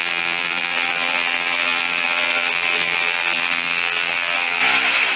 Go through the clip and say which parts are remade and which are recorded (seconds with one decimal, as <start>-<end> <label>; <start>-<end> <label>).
0.0-4.6 remade; 4.6-5.2 recorded